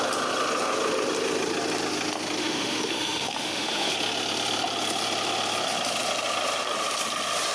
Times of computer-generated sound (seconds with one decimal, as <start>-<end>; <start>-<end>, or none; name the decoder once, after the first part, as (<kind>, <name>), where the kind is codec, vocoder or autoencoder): 2.4-3.9 (autoencoder, DAC-VAE)